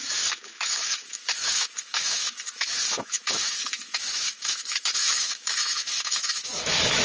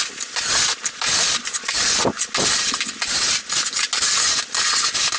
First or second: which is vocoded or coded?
first